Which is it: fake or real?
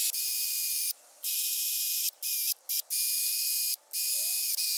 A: real